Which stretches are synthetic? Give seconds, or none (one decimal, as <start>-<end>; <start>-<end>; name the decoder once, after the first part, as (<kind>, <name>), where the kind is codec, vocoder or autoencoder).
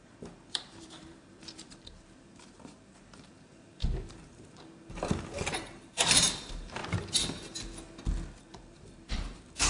0.0-6.8 (vocoder, BigVGAN v2); 8.4-9.7